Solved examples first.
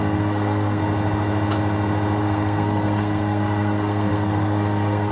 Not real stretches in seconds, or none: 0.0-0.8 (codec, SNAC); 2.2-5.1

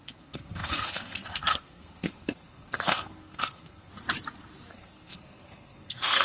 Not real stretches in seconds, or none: 0.0-3.9 (codec, SNAC); 4.7-6.2

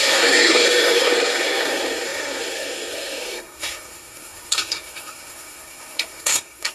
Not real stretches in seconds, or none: 0.0-6.7 (codec, SNAC)

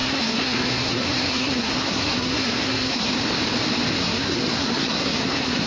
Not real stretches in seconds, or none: 0.0-3.1 (codec, SNAC); 3.9-5.7

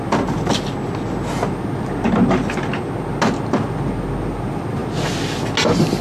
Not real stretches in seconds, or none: none

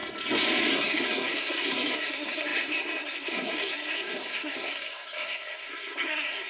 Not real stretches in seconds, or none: 0.7-6.5 (codec, SNAC)

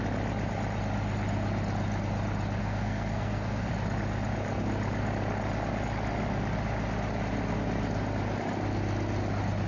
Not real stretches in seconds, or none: 2.6-3.7 (codec, SNAC)